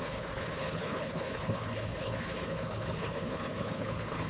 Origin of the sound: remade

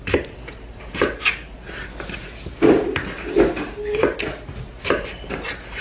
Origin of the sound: recorded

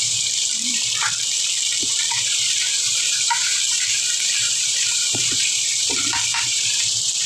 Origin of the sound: remade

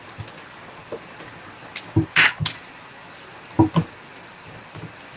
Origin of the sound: recorded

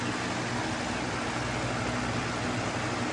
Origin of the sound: recorded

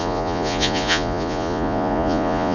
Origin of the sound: remade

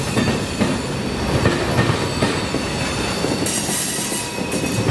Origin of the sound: recorded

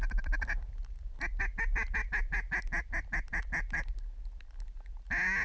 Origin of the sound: recorded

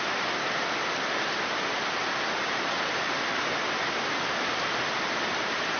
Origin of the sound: recorded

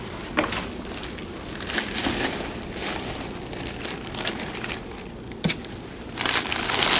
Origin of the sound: recorded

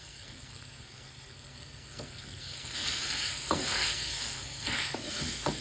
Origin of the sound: remade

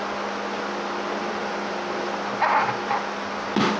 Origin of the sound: recorded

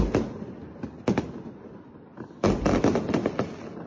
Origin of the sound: recorded